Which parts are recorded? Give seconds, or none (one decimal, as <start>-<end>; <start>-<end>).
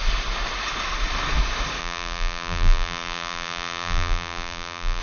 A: 0.0-1.8